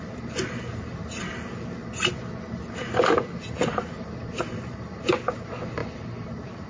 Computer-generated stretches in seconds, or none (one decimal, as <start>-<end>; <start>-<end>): 0.0-1.9; 3.4-6.7